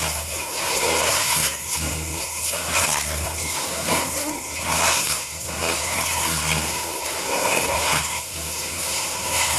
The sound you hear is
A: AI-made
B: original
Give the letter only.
A